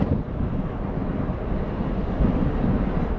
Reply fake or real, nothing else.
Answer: real